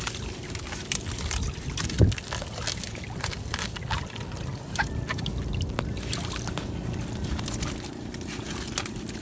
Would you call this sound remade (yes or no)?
no